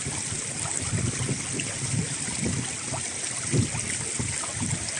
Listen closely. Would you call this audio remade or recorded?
recorded